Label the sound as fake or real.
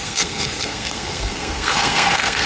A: fake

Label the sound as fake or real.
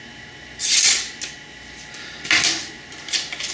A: real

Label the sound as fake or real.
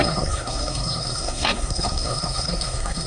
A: fake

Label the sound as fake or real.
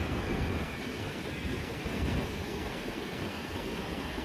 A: fake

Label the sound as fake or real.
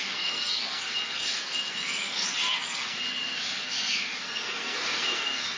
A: fake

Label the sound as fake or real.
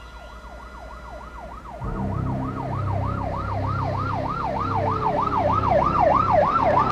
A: real